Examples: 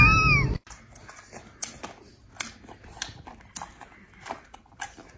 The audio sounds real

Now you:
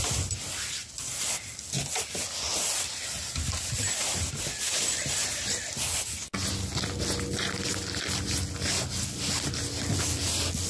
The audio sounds real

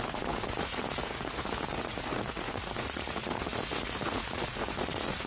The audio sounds fake